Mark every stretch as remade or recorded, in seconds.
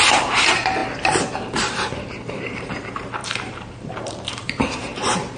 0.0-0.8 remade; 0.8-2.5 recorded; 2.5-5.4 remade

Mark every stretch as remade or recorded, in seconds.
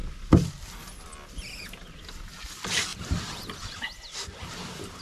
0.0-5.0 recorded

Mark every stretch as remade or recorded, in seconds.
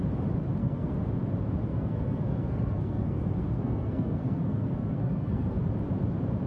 0.0-0.6 recorded; 0.6-1.1 remade; 1.1-1.7 recorded; 1.7-5.6 remade; 5.6-6.5 recorded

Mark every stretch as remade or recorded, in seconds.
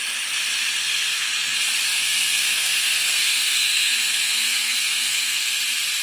0.0-0.8 recorded; 0.8-1.3 remade; 1.3-1.9 recorded; 1.9-5.5 remade; 5.5-6.0 recorded